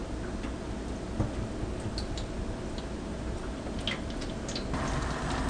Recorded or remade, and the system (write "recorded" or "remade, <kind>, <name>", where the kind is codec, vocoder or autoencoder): recorded